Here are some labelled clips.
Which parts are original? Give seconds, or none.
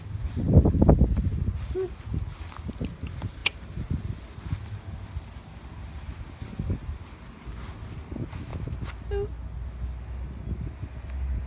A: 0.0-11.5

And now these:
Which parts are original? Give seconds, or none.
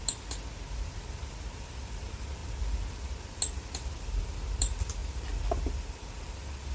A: 0.0-5.0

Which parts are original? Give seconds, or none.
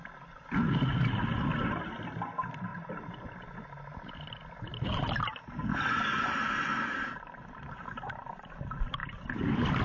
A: 0.0-6.7; 7.8-9.0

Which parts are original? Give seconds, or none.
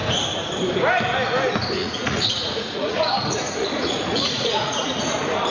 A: 0.0-1.8; 5.1-5.5